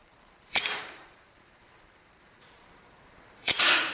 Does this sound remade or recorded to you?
remade